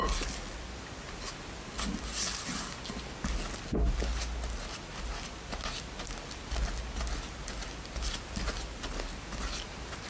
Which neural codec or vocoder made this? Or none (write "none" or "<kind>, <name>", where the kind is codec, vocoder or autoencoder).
none